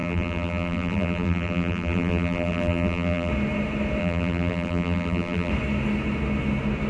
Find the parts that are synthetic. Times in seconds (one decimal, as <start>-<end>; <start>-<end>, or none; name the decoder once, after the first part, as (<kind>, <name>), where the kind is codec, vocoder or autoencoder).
0.0-3.3 (vocoder, BigVGAN v2); 4.0-5.5